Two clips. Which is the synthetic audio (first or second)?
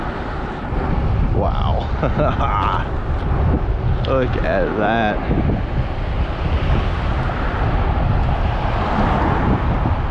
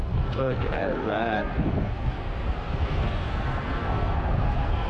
second